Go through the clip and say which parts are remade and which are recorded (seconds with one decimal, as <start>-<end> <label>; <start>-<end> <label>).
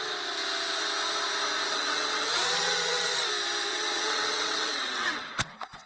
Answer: 0.0-1.6 recorded; 1.6-3.3 remade; 3.3-3.7 recorded; 3.7-5.9 remade